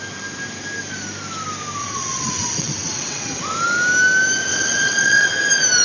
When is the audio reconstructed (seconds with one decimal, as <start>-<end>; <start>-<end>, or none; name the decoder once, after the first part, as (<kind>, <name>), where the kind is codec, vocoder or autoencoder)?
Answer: 1.8-3.4 (vocoder, WaveNeXt); 4.5-5.3